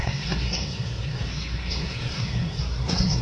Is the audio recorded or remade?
remade